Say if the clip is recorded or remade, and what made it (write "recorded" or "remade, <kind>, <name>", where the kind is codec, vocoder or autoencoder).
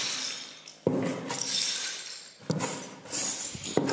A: recorded